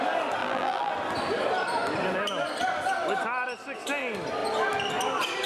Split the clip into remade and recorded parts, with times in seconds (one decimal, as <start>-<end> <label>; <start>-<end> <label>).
0.0-0.4 recorded; 0.4-0.9 remade; 0.9-5.5 recorded